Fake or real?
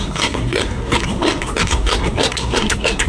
fake